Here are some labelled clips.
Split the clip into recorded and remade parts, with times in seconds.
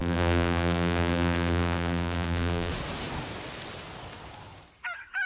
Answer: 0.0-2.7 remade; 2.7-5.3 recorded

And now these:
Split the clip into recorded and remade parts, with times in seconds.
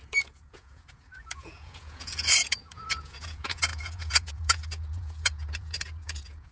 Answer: 0.0-6.5 remade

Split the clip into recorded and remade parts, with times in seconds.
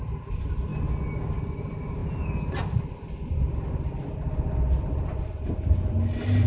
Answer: 0.0-0.7 remade; 0.7-1.5 recorded; 1.5-2.0 remade; 2.0-5.9 recorded; 5.9-6.5 remade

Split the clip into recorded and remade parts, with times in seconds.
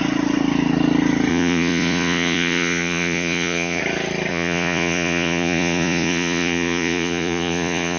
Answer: 0.0-1.3 recorded; 1.3-3.8 remade; 3.8-4.3 recorded; 4.3-8.0 remade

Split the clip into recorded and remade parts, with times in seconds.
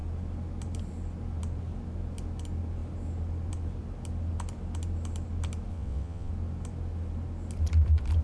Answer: 0.0-5.7 recorded; 5.7-6.3 remade; 6.3-8.2 recorded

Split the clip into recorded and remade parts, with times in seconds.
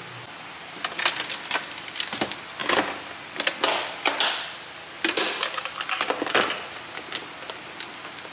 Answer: 0.0-8.3 recorded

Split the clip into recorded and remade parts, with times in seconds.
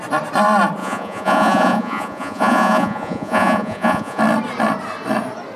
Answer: 0.0-0.8 recorded; 0.8-4.2 remade; 4.2-5.6 recorded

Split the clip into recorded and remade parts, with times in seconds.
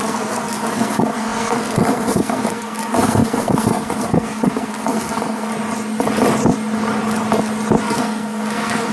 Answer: 0.0-5.5 remade; 5.5-7.8 recorded; 7.8-8.9 remade